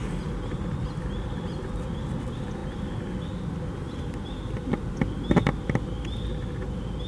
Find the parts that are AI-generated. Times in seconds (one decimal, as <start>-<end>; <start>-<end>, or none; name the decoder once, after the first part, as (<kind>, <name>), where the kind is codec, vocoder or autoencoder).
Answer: none